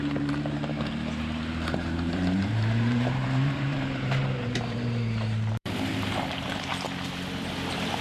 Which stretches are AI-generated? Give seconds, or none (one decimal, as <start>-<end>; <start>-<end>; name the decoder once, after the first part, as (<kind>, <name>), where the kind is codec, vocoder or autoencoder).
0.0-6.7 (vocoder, BigVGAN v2)